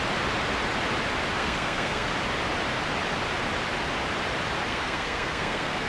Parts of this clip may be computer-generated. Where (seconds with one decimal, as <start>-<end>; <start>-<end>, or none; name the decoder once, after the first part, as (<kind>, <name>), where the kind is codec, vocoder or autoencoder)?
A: 1.4-2.1 (codec, SNAC); 4.7-5.9

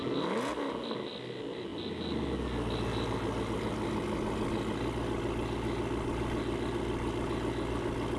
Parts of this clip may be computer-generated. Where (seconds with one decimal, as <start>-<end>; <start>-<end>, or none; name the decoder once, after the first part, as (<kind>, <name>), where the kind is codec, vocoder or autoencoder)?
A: none

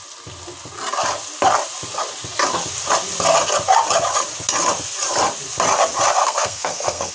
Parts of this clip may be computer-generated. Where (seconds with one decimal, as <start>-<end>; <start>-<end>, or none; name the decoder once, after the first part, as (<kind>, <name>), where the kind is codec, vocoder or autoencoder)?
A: 6.2-7.1 (codec, SNAC)